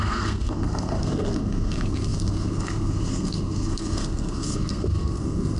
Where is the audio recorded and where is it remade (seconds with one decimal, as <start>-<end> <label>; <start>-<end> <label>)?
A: 0.0-5.6 remade